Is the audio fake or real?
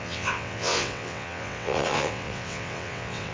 fake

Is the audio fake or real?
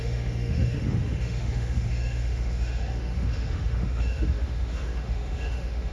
fake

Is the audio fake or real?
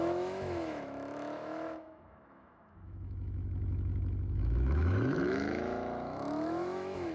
fake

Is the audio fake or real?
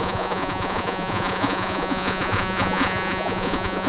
fake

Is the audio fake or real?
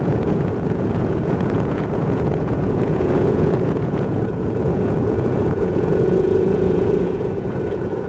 fake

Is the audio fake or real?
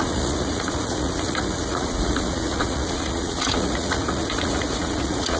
fake